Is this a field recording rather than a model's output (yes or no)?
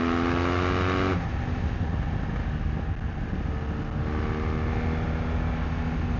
yes